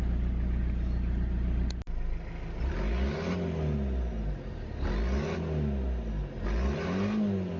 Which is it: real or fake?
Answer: real